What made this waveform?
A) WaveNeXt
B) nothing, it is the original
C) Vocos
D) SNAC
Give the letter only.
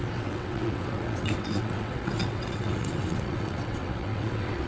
A